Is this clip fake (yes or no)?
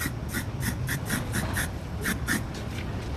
no